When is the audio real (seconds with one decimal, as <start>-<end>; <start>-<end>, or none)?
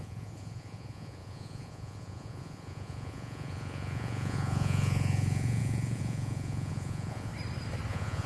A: 7.3-7.9